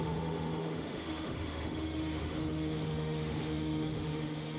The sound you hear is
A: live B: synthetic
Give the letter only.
B